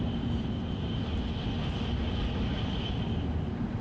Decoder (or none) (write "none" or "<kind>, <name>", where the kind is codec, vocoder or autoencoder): none